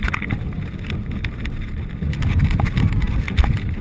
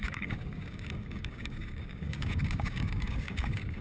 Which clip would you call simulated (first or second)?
second